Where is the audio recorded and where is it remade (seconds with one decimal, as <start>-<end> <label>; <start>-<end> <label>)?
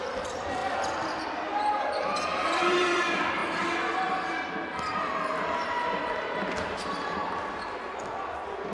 0.0-2.3 recorded; 2.3-3.0 remade; 3.0-8.7 recorded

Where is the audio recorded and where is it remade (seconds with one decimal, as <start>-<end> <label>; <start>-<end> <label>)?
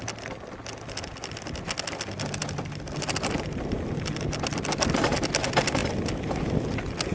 0.0-7.1 recorded